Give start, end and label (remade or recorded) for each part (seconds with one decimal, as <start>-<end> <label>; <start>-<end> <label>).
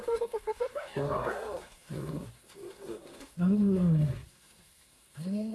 0.0-5.5 remade